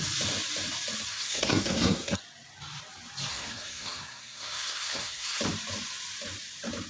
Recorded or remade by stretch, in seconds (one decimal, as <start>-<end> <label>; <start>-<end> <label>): 0.0-1.1 recorded; 1.1-2.2 remade; 2.2-3.3 recorded; 3.3-5.4 remade; 5.4-6.9 recorded